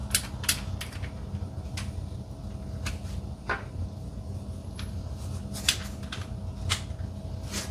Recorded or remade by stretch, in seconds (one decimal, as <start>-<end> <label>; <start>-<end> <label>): 0.0-7.7 recorded